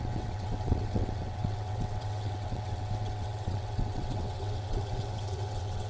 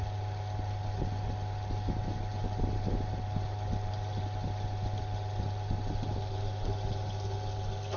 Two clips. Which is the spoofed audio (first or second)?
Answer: first